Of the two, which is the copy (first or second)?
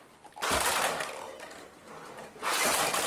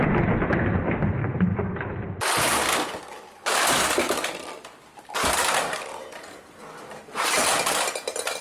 first